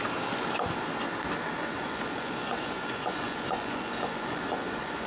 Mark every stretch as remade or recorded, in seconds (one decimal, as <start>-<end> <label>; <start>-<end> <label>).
0.0-1.6 recorded; 1.6-5.1 remade